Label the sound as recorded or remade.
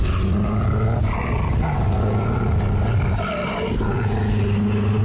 recorded